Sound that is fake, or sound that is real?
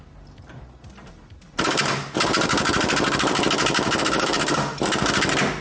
real